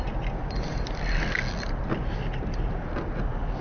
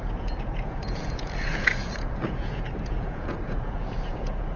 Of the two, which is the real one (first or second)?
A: first